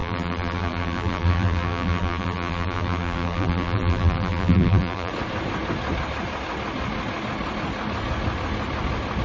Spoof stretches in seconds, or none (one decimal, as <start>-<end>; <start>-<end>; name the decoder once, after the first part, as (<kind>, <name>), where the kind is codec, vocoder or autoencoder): 0.0-5.1 (vocoder, BigVGAN v2)